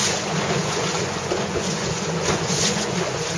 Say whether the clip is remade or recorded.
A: remade